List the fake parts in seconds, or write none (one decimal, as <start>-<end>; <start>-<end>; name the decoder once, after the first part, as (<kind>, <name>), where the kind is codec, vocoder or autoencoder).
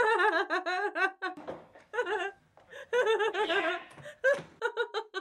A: 1.3-2.4 (codec, DAC); 3.1-3.7